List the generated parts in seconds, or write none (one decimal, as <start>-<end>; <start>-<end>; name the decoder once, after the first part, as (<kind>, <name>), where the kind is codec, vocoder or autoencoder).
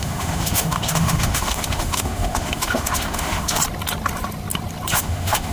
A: 0.0-3.6 (autoencoder, DAC-VAE); 4.9-5.5